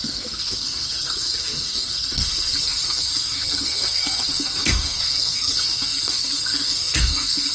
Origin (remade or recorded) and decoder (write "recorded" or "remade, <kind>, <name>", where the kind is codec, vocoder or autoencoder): remade, codec, SNAC